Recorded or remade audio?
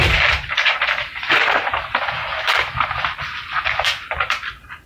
remade